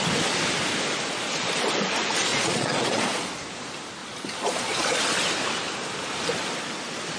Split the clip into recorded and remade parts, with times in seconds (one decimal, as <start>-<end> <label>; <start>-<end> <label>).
0.0-2.3 recorded; 2.3-3.3 remade; 3.3-4.0 recorded; 4.0-4.9 remade; 4.9-7.2 recorded